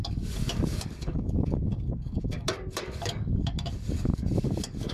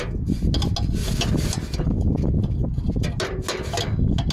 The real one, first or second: second